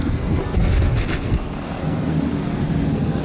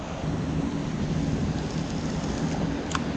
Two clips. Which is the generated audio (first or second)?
first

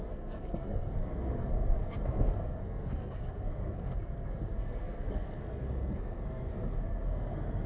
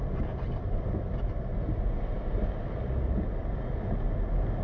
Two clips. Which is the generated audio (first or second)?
first